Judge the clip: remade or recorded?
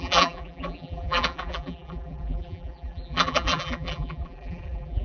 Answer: remade